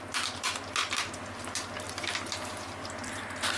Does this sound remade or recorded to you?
recorded